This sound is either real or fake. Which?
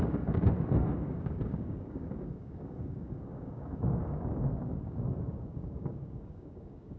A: fake